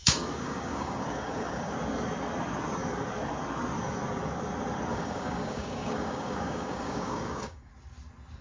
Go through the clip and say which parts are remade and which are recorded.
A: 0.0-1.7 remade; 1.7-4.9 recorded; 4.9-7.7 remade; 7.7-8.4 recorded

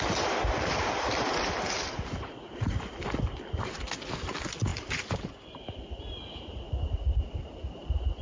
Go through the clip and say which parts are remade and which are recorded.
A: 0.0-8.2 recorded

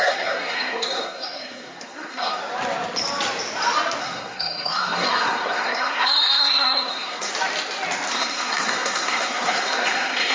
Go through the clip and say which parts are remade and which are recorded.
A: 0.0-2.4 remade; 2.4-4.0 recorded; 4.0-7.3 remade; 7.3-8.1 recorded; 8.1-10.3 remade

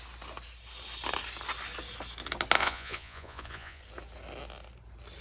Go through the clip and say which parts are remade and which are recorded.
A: 0.0-2.6 recorded; 2.6-3.8 remade; 3.8-5.2 recorded

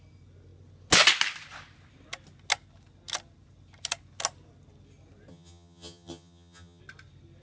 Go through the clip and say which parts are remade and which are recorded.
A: 0.0-5.3 recorded; 5.3-6.8 remade; 6.8-7.4 recorded

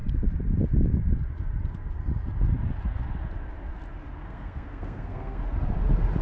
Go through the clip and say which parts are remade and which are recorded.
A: 0.0-4.2 recorded; 4.2-5.4 remade; 5.4-6.2 recorded